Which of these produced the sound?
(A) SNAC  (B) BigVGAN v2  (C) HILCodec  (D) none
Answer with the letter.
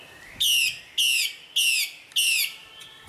D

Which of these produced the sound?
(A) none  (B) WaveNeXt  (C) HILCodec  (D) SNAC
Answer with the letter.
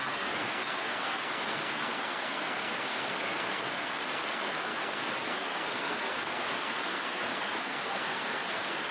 D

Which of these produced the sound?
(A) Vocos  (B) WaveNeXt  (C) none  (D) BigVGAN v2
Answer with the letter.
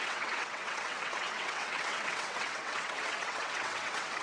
B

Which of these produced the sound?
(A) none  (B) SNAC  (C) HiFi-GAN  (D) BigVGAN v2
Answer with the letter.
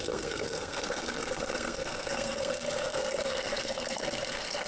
B